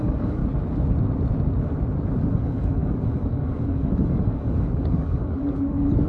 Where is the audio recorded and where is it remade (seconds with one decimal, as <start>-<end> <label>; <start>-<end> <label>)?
0.0-0.4 remade; 0.4-2.3 recorded; 2.3-6.1 remade